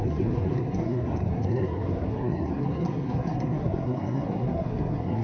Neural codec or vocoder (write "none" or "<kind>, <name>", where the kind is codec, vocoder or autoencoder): codec, SNAC